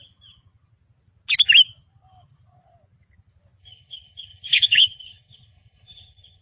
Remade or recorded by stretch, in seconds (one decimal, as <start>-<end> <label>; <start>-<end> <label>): 0.0-3.6 recorded; 3.6-6.4 remade